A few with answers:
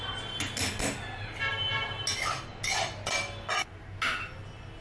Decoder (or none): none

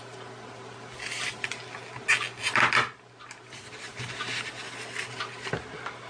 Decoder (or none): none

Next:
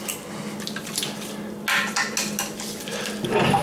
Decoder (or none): none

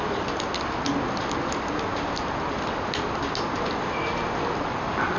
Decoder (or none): none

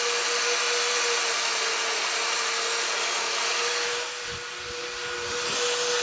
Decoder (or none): none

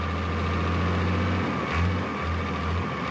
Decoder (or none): none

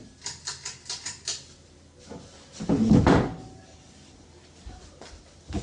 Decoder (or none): none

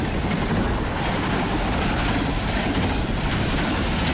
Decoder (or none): none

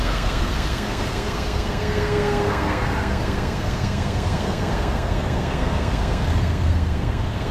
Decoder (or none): codec, SNAC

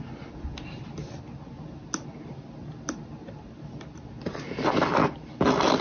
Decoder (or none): none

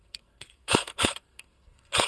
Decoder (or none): codec, SNAC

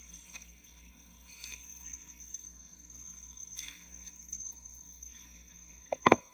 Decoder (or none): codec, SNAC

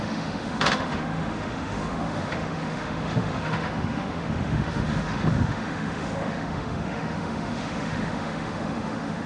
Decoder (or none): autoencoder, DAC-VAE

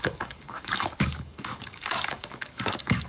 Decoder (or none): codec, DAC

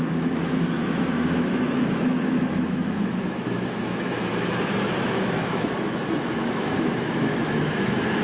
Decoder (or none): autoencoder, DAC-VAE